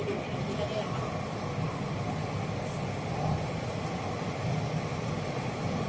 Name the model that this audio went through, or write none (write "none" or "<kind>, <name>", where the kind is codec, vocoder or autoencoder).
none